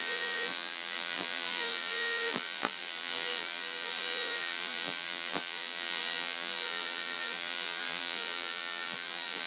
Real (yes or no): no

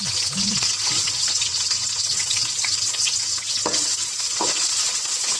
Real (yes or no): no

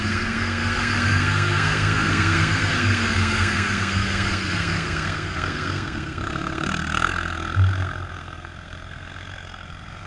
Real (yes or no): no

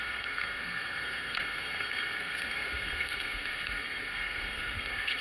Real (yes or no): no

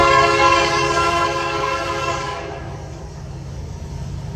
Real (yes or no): no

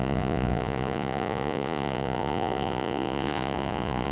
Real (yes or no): no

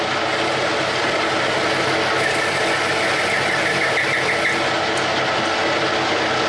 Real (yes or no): yes